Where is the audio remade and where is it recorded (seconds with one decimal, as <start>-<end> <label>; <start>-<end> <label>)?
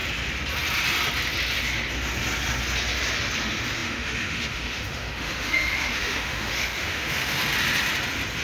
0.0-3.4 recorded; 3.4-7.4 remade; 7.4-8.4 recorded